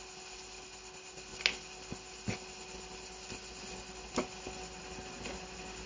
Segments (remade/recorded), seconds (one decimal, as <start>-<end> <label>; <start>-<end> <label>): 0.0-5.9 recorded